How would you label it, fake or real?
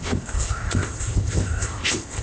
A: fake